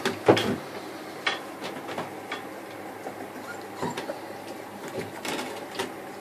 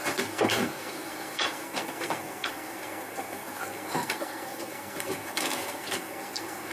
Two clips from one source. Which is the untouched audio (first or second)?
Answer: first